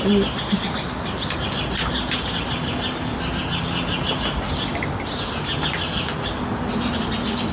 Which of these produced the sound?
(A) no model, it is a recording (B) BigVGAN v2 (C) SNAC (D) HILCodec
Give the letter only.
A